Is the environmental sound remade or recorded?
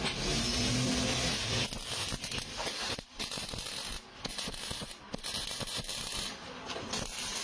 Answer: recorded